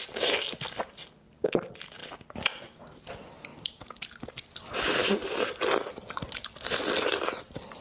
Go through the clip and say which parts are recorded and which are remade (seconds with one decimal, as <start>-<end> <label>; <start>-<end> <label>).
0.0-5.0 recorded; 5.0-5.6 remade; 5.6-7.8 recorded